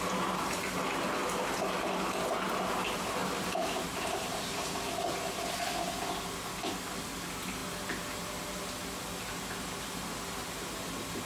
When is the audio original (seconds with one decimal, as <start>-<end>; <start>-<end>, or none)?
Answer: 0.0-3.2; 4.8-11.3